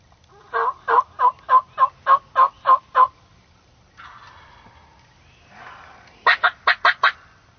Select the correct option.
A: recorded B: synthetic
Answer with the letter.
A